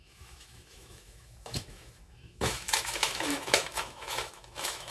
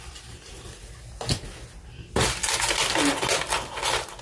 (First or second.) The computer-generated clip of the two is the first